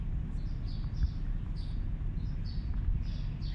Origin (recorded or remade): recorded